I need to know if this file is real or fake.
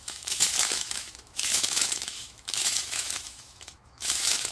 fake